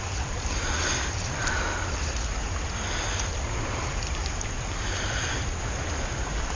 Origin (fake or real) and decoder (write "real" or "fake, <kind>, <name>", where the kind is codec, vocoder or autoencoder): real